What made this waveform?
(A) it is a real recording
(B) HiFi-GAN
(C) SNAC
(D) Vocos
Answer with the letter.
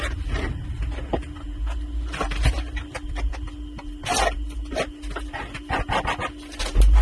A